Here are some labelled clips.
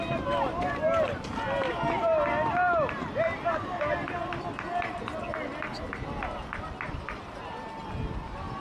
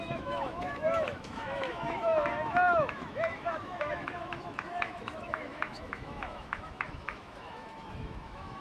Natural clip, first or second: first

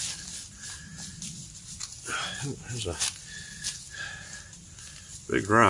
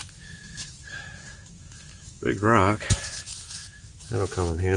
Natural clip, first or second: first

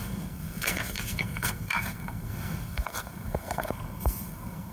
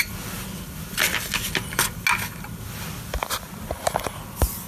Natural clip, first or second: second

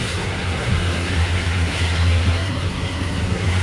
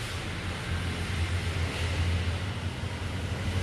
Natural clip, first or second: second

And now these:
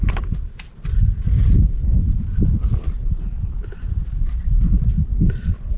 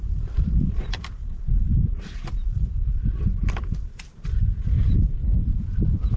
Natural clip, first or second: first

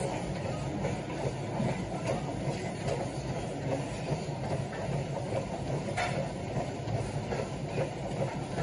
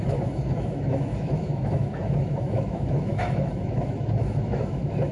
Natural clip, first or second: first